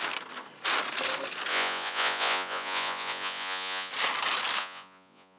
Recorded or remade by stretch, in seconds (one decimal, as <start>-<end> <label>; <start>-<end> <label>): 0.0-1.5 recorded; 1.5-3.9 remade; 3.9-4.6 recorded; 4.6-5.4 remade